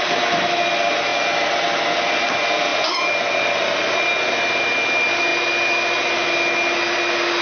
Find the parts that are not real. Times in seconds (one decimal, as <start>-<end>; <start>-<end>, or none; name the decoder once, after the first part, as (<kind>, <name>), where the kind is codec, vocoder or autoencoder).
none